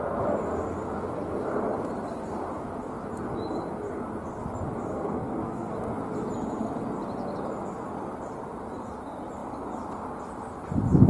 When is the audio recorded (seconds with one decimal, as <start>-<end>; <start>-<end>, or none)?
0.0-4.9; 5.8-11.1